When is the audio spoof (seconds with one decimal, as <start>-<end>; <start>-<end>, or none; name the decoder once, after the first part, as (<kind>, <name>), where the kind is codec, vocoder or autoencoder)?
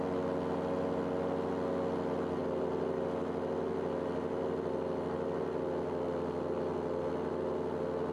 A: none